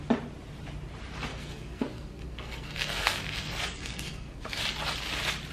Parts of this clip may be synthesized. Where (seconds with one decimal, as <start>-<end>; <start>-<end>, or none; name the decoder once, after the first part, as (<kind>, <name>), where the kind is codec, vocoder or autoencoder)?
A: 1.3-4.6 (codec, SNAC)

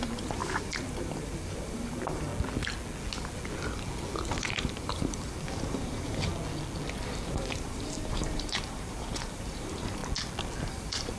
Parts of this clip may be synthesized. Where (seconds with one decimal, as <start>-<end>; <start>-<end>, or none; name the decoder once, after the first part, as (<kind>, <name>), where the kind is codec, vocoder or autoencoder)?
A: 0.0-2.3 (vocoder, BigVGAN v2); 4.4-6.3; 7.0-10.0; 10.6-11.2

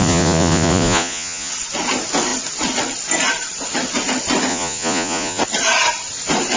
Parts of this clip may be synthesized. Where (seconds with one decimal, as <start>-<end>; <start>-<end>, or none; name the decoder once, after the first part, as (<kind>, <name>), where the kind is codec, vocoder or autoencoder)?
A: 0.0-1.5 (vocoder, Vocos); 4.5-5.4